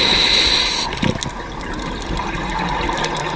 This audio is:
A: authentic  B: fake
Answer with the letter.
A